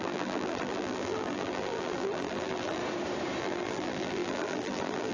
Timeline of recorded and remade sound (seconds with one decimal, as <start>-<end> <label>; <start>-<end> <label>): 0.0-2.8 remade; 2.8-3.4 recorded; 3.4-5.1 remade